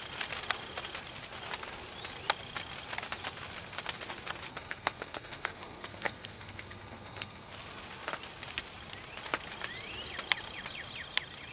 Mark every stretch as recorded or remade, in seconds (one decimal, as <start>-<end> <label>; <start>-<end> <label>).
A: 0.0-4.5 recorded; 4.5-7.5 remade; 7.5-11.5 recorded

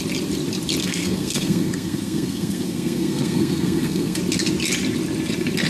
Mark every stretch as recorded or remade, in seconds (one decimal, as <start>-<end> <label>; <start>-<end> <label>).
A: 0.0-0.8 recorded; 0.8-4.2 remade; 4.2-5.7 recorded

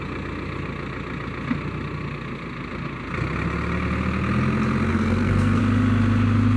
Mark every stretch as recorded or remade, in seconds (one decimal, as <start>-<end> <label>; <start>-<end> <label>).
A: 0.0-4.9 recorded; 4.9-5.6 remade; 5.6-6.6 recorded

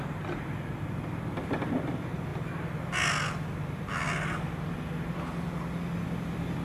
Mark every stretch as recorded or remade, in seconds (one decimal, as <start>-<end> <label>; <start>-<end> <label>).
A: 0.0-6.6 recorded

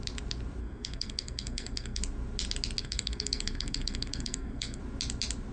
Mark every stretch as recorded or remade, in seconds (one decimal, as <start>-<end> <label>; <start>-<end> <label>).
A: 0.0-0.6 recorded; 0.6-2.0 remade; 2.0-2.8 recorded; 2.8-4.8 remade; 4.8-5.5 recorded